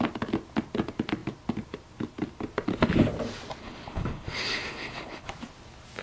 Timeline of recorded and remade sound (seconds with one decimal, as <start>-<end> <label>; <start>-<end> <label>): 0.0-3.6 recorded; 3.6-5.3 remade; 5.3-6.0 recorded